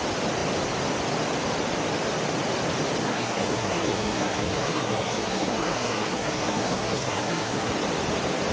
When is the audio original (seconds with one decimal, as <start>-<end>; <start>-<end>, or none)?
0.0-3.0; 7.7-8.5